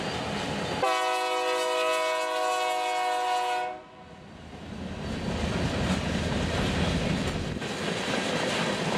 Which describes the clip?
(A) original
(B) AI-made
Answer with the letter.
A